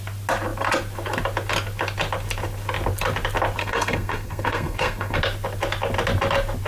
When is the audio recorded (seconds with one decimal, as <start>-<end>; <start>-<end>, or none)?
0.0-3.6; 5.2-6.7